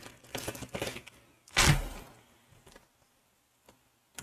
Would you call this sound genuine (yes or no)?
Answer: yes